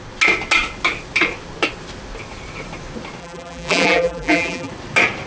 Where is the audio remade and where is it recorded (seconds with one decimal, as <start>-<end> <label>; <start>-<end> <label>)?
0.0-3.2 recorded; 3.2-4.7 remade; 4.7-5.3 recorded